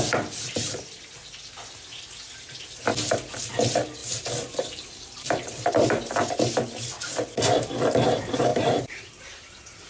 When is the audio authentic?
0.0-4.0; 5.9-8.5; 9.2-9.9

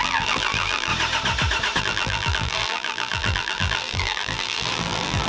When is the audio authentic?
0.9-1.8

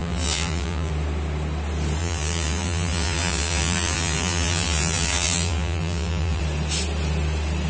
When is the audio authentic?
0.9-2.0; 6.4-7.7